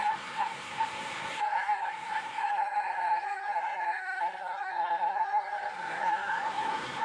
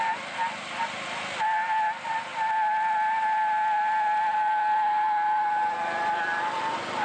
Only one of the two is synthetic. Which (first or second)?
first